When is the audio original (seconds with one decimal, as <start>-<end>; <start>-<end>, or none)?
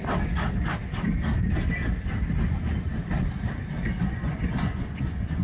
0.0-4.0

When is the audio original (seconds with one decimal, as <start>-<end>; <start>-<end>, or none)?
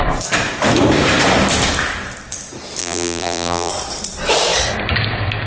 0.0-2.8; 3.7-5.5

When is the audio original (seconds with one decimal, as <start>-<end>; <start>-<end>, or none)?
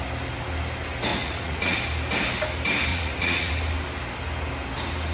0.0-1.1; 1.8-2.9; 3.5-5.1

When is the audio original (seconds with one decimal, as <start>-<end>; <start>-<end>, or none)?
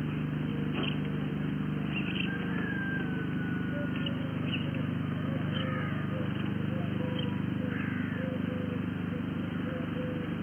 0.0-4.3; 5.9-10.4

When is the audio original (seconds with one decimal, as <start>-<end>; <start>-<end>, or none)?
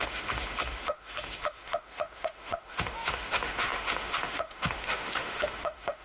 none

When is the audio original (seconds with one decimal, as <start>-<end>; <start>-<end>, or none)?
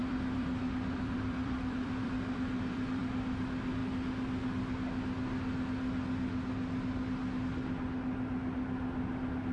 3.0-9.5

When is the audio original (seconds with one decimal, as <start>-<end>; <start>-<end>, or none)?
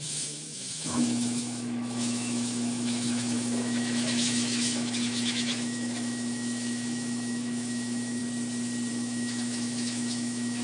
8.2-8.9